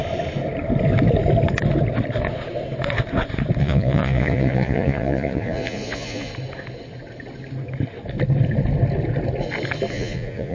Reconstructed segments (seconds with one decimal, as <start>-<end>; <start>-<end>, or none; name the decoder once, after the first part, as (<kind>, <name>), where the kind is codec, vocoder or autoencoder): 3.6-6.3 (vocoder, Vocos); 9.9-10.5